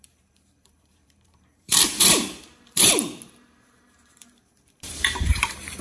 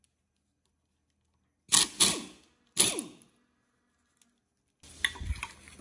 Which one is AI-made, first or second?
first